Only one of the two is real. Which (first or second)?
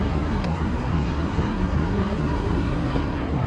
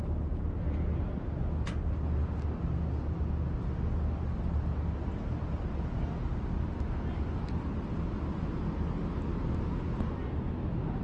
second